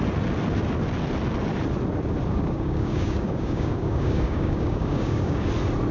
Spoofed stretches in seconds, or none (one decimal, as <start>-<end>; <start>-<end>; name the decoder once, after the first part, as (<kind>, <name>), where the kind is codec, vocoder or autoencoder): 2.3-5.5 (codec, DAC)

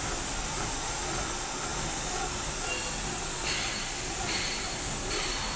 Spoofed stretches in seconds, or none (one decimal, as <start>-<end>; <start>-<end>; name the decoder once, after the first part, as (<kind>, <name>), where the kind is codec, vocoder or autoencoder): none

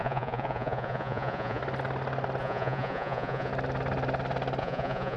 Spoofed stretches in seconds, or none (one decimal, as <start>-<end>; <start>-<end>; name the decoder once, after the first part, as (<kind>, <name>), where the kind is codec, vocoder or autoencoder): 0.0-1.6 (vocoder, Vocos); 2.4-3.5; 4.6-5.2

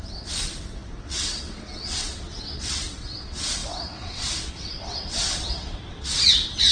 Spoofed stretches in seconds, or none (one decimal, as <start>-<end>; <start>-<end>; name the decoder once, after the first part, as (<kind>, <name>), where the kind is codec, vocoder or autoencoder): 0.0-6.7 (vocoder, WaveNeXt)